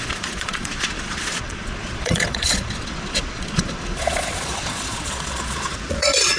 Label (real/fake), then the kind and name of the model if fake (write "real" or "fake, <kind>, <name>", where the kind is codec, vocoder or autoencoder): fake, vocoder, Vocos